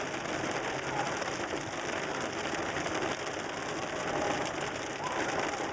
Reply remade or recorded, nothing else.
recorded